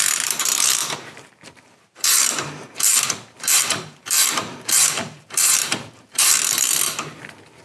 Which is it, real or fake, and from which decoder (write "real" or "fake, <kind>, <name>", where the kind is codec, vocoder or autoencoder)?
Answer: fake, vocoder, BigVGAN v2